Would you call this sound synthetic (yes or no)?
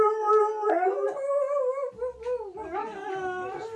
no